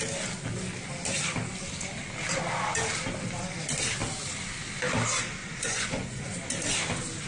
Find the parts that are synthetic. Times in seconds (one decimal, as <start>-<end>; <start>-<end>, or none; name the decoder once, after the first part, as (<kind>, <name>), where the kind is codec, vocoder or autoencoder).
5.4-6.4 (vocoder, Vocos)